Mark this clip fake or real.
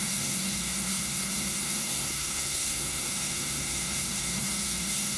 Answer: fake